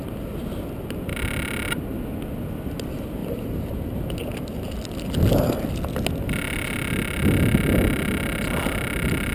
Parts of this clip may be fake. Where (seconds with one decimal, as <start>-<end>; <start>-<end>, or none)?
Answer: 3.2-3.7